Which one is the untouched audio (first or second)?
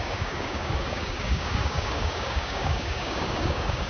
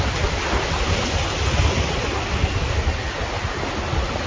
second